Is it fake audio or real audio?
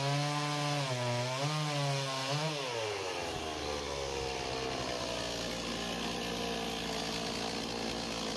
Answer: real